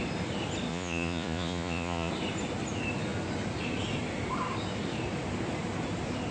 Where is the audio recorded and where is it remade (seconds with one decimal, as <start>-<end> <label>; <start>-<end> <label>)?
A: 0.0-0.7 recorded; 0.7-2.1 remade; 2.1-6.3 recorded